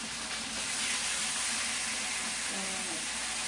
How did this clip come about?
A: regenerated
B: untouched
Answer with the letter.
B